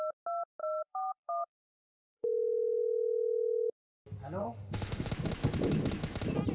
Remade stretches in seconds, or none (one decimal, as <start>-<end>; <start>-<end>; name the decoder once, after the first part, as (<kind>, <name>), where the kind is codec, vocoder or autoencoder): 0.6-2.8 (autoencoder, DAC-VAE); 4.4-5.1